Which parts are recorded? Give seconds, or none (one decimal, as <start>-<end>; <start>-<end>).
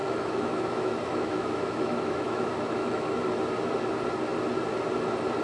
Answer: 3.2-5.4